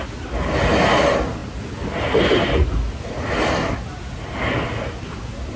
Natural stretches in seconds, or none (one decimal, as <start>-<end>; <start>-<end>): 0.0-5.6

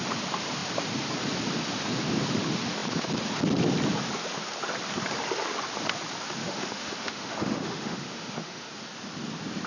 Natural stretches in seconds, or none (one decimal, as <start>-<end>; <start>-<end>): 0.0-6.4; 8.7-9.7

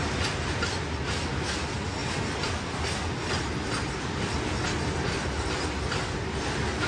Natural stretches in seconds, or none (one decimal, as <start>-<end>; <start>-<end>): 0.0-6.9

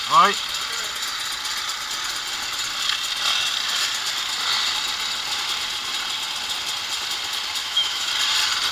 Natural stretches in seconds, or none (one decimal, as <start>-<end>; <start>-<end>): 0.0-7.6; 8.1-8.7

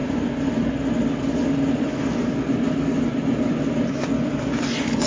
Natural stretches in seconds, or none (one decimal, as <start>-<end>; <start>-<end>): 0.0-5.1